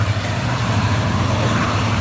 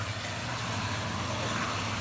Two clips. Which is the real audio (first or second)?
second